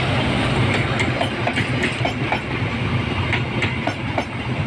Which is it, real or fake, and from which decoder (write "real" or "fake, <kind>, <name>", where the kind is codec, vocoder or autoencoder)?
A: real